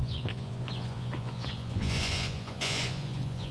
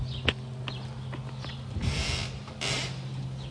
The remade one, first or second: first